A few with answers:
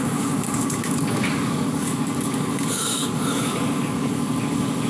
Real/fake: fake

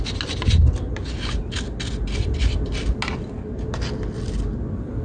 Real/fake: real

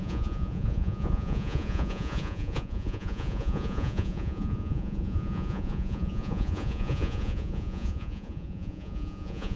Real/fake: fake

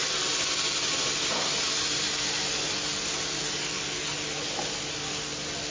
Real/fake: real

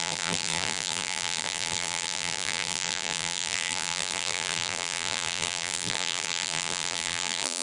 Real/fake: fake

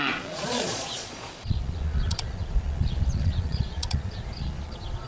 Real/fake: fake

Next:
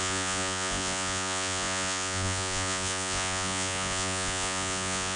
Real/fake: fake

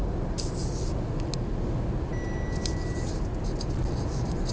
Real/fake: real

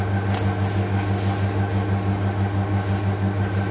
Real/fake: real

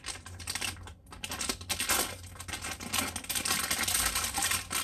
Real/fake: real